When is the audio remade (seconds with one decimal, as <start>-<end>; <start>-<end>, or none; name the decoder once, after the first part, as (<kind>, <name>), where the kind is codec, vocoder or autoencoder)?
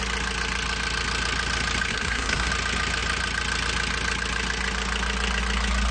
1.9-2.5 (codec, SNAC)